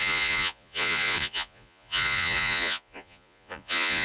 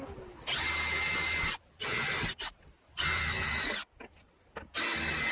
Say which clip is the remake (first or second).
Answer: first